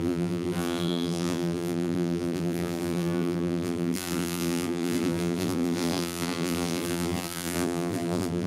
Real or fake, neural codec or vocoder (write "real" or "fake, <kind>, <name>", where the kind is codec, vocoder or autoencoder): fake, vocoder, BigVGAN v2